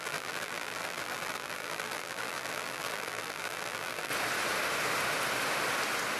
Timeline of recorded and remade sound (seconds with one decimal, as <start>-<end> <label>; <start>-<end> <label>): 0.0-4.1 remade; 4.1-6.2 recorded